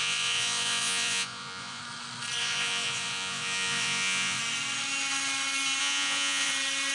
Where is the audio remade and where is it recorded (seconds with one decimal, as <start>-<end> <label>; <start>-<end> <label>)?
0.0-1.8 remade; 1.8-2.4 recorded; 2.4-4.4 remade; 4.4-5.8 recorded; 5.8-6.5 remade; 6.5-6.9 recorded